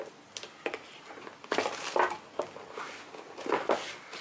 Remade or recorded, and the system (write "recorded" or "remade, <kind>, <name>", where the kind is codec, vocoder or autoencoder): recorded